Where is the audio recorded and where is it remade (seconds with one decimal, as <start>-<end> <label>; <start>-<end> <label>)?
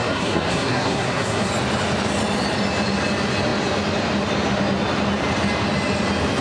0.0-1.5 remade; 1.5-6.4 recorded